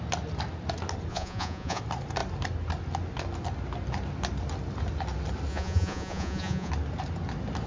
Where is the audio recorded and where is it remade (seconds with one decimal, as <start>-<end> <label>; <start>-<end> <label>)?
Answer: 0.0-1.1 recorded; 1.1-1.8 remade; 1.8-5.5 recorded; 5.5-6.7 remade; 6.7-7.7 recorded